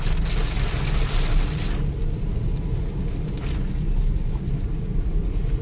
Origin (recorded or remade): recorded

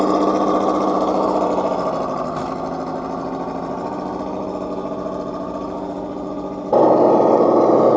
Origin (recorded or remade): recorded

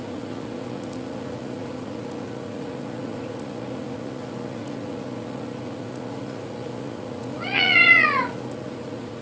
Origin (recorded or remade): remade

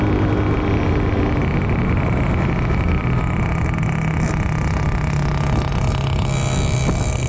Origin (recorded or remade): recorded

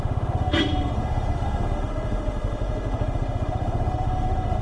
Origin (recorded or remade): remade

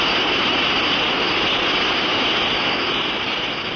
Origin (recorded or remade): recorded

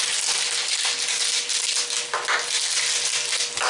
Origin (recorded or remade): recorded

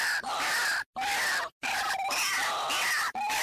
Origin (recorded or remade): recorded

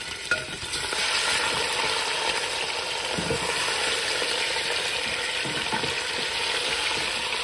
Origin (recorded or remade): recorded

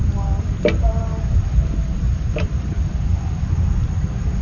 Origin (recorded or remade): recorded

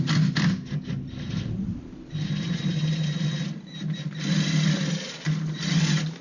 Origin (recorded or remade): recorded